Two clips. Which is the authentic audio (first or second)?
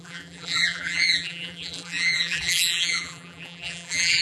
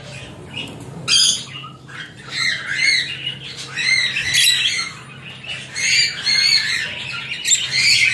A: second